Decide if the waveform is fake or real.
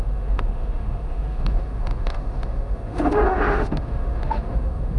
fake